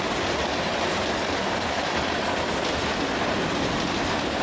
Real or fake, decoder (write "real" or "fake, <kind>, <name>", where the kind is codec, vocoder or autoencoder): fake, vocoder, BigVGAN v2